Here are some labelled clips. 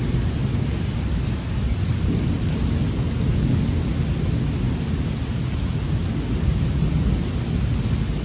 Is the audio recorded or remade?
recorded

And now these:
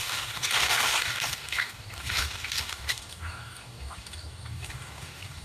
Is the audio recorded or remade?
remade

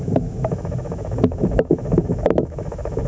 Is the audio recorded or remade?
remade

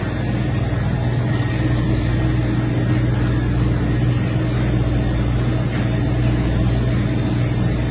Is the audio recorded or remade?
recorded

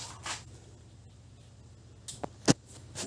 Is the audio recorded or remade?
recorded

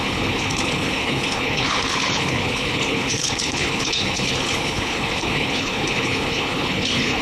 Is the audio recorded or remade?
remade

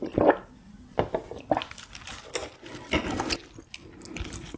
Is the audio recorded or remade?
recorded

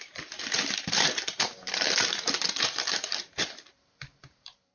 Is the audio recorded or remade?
remade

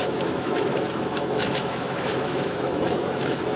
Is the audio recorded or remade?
remade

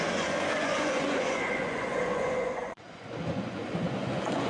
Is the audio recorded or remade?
remade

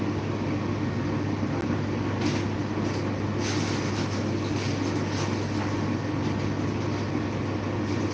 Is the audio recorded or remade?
recorded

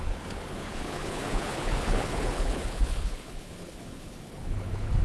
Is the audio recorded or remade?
remade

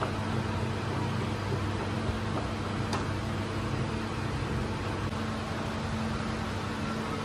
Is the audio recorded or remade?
recorded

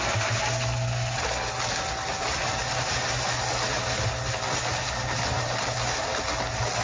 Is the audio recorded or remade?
recorded